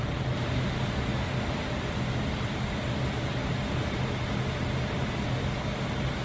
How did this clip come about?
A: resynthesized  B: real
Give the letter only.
B